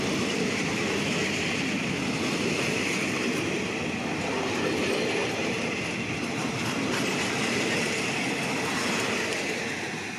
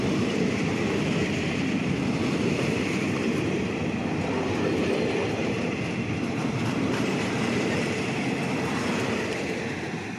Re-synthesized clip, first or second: second